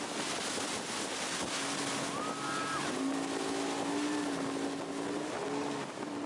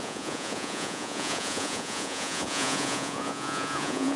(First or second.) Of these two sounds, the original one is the first